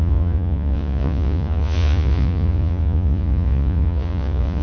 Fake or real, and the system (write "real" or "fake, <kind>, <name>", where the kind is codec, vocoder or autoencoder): fake, vocoder, Vocos